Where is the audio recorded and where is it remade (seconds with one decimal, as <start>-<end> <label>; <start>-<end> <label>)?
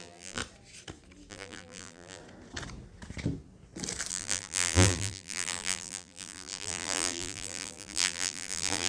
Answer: 0.0-0.4 remade; 0.4-1.3 recorded; 1.3-2.2 remade; 2.2-4.1 recorded; 4.1-8.9 remade